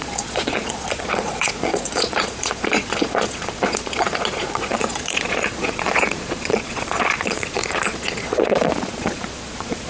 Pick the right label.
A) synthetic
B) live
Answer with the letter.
A